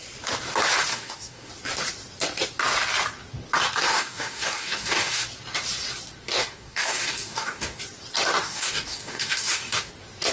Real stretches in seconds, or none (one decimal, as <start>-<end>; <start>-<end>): 0.0-0.9; 1.5-3.9; 5.3-6.4; 7.8-8.4; 9.9-10.3